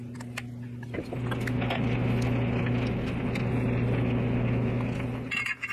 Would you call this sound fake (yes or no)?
no